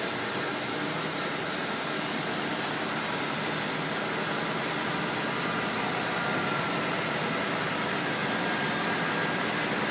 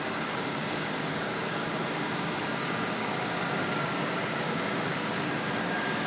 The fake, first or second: second